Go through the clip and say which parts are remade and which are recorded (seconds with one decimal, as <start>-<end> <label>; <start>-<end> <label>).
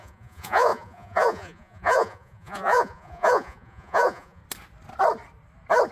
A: 0.0-4.4 remade; 4.4-5.9 recorded